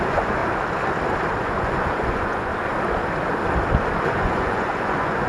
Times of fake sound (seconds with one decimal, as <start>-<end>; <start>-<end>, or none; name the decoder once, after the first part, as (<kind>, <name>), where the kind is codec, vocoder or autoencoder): 0.0-0.4 (vocoder, Vocos); 1.4-2.5; 4.0-5.3